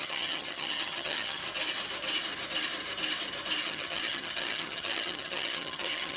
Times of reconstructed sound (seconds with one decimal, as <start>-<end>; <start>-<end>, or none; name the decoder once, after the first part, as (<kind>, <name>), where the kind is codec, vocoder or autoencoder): 0.0-1.4 (vocoder, HiFi-GAN); 3.6-6.2